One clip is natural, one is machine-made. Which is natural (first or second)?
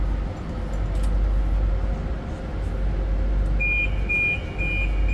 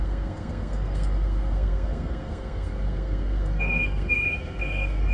first